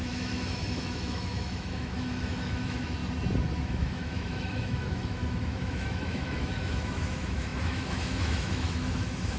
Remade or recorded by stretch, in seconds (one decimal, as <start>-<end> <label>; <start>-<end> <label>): 0.0-3.0 remade; 3.0-3.6 recorded; 3.6-9.4 remade